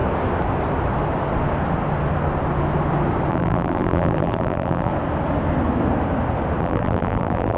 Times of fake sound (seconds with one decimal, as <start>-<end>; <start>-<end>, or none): 3.3-4.9; 6.6-7.6